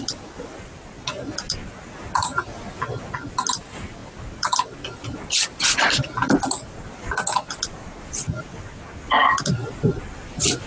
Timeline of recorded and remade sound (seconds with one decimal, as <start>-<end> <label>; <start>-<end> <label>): 0.0-10.7 recorded

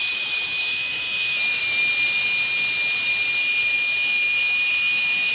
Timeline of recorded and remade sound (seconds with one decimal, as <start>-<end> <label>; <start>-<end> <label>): 0.0-0.6 recorded; 0.6-1.6 remade; 1.6-3.6 recorded; 3.6-5.3 remade

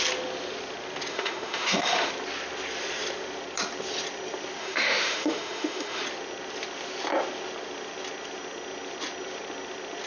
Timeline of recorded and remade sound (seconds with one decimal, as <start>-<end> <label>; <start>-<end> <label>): 0.0-1.1 recorded; 1.1-2.1 remade; 2.1-4.6 recorded; 4.6-6.0 remade; 6.0-10.1 recorded

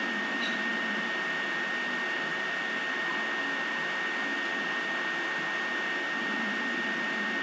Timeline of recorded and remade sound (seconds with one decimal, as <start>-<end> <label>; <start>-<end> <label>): 0.0-7.4 recorded

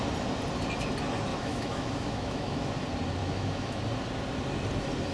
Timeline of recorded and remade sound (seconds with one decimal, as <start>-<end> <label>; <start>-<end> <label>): 0.0-1.3 recorded; 1.3-2.7 remade; 2.7-3.2 recorded; 3.2-3.8 remade; 3.8-5.1 recorded